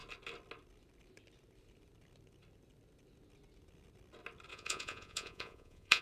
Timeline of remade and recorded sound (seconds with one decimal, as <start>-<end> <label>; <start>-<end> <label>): 0.0-4.5 recorded; 4.5-6.0 remade